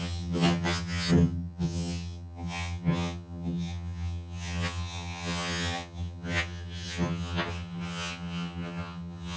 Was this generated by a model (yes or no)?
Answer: yes